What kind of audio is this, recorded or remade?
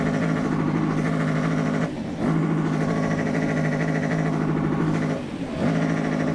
recorded